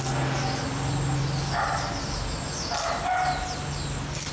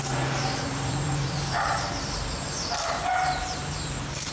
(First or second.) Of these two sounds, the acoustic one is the first